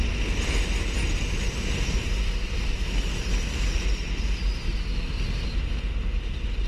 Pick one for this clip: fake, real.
real